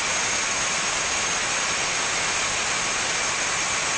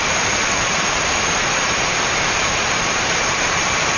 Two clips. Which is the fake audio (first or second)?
second